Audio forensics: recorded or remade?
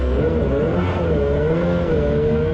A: remade